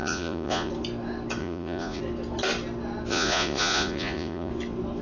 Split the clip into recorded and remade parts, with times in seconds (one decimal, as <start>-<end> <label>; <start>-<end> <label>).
0.0-0.7 remade; 0.7-1.4 recorded; 1.4-2.0 remade; 2.0-3.1 recorded; 3.1-4.5 remade; 4.5-5.0 recorded